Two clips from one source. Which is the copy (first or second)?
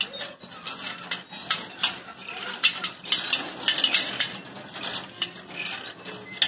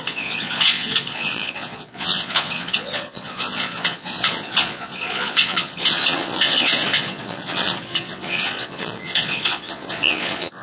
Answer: second